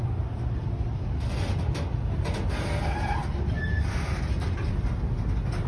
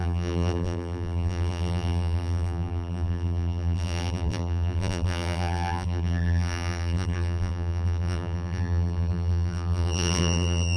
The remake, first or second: second